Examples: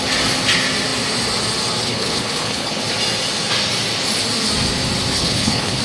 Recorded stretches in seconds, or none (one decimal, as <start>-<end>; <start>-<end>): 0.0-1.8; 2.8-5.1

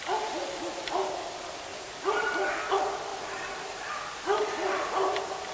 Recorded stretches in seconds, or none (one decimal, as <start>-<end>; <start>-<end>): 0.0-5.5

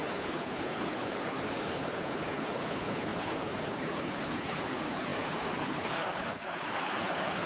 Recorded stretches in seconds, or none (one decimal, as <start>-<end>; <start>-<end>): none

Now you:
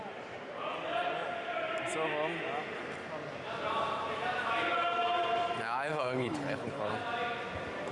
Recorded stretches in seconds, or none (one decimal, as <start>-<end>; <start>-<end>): 0.0-5.9; 6.9-7.9

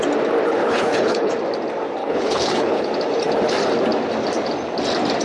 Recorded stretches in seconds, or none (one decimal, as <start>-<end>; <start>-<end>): 0.0-0.6; 1.3-2.0; 2.9-5.2

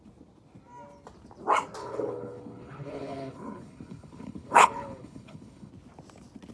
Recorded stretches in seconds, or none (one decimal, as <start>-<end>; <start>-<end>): 0.0-1.8; 5.7-6.5

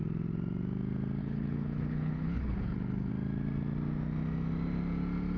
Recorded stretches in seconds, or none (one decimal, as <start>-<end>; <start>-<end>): 0.0-1.2; 3.1-5.4